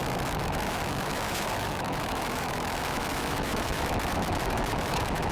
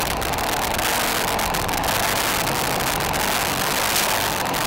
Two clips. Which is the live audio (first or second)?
second